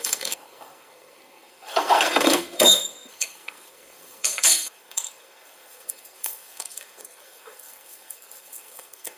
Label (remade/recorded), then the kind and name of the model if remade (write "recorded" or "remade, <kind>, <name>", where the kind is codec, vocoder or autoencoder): remade, codec, SNAC